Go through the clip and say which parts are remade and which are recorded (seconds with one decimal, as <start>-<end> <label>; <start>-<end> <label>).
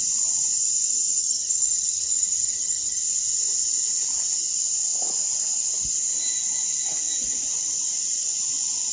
0.0-1.2 recorded; 1.2-3.0 remade; 3.0-8.9 recorded